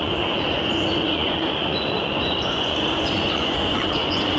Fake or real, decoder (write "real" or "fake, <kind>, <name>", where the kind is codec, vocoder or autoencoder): fake, vocoder, Vocos